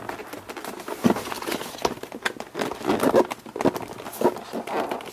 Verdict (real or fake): real